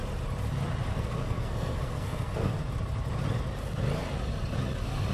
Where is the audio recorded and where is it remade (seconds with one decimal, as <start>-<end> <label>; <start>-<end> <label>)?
0.0-0.9 recorded; 0.9-2.6 remade; 2.6-5.1 recorded